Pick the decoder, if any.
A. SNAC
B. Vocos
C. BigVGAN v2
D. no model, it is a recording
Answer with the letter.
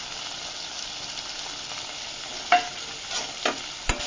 D